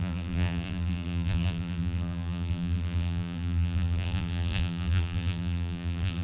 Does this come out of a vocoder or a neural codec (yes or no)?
yes